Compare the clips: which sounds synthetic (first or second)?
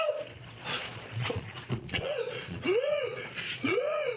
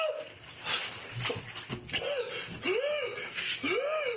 first